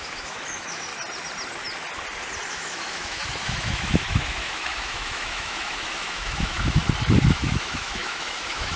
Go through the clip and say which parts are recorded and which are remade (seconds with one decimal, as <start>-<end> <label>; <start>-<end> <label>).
0.0-0.9 remade; 0.9-2.5 recorded; 2.5-6.8 remade; 6.8-7.3 recorded; 7.3-8.8 remade